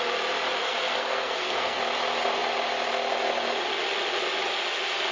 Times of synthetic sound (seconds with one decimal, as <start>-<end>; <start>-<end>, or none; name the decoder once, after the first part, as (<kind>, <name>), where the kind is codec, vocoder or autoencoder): 0.6-1.8 (codec, SNAC)